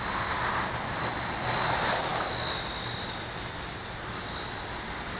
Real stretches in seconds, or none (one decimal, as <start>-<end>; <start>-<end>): 0.0-5.2